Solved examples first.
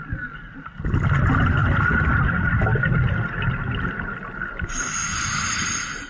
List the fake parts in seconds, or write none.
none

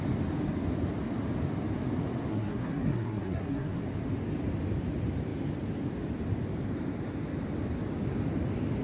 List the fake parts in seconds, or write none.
2.3-3.8 (codec, SNAC)